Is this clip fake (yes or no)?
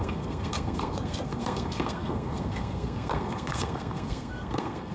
yes